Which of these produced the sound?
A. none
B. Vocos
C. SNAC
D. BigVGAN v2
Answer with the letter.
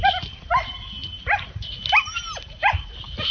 A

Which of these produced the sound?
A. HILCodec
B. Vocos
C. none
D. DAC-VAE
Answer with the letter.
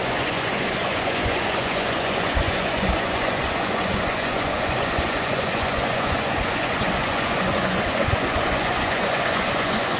B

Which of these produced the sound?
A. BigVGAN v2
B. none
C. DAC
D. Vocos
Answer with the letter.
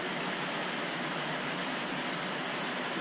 B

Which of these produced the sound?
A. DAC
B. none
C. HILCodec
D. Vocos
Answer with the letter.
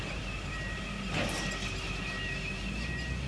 B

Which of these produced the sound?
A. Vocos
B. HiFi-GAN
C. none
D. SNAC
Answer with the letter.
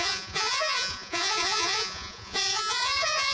A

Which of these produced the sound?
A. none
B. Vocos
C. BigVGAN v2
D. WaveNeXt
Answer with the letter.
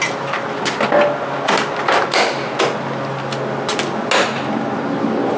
A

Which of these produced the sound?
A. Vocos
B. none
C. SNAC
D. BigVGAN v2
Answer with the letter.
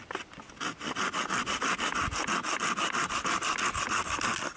B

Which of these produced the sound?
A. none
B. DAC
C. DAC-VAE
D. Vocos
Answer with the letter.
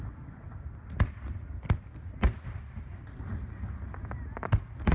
A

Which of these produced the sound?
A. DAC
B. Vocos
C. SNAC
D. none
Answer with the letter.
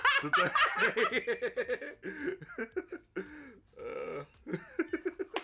D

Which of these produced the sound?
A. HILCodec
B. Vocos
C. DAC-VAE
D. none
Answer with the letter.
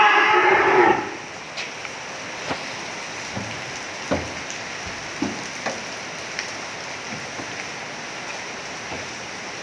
D